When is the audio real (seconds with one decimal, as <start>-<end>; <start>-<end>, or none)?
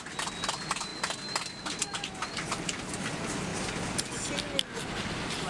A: 0.0-5.5